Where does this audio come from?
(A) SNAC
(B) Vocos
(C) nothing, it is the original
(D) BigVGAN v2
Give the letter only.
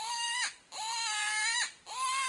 D